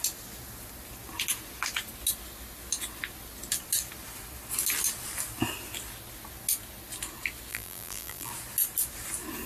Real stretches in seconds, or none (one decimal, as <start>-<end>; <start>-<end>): 0.0-7.5; 8.3-9.5